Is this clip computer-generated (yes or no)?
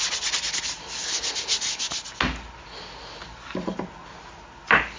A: no